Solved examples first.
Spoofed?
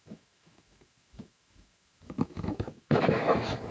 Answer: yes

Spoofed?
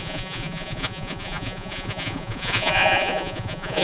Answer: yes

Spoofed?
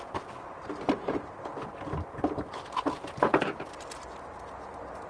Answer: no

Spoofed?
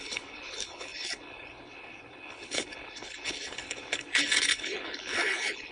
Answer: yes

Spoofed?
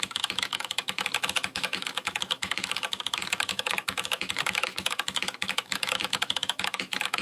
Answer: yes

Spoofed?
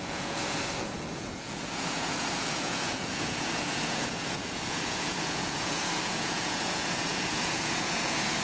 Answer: yes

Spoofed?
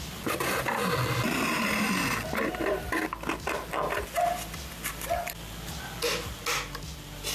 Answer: no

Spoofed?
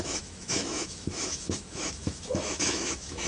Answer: yes